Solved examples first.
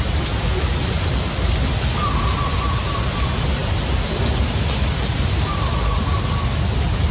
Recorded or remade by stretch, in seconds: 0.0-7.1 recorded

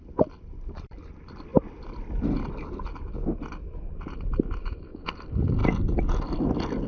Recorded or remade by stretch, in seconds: 0.0-4.6 recorded; 4.6-5.1 remade; 5.1-6.9 recorded

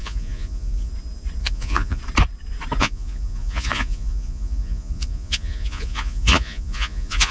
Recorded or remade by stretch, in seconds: 0.0-0.9 remade; 0.9-1.4 recorded; 1.4-2.0 remade; 2.0-2.8 recorded; 2.8-7.3 remade

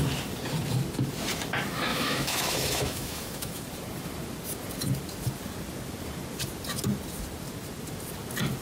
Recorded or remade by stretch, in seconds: 0.0-1.9 recorded; 1.9-3.6 remade; 3.6-8.6 recorded

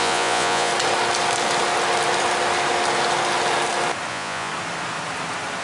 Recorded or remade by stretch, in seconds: 0.0-0.7 remade; 0.7-4.1 recorded; 4.1-4.5 remade; 4.5-5.6 recorded

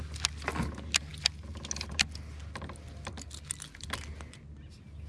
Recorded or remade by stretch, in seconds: 0.0-5.1 recorded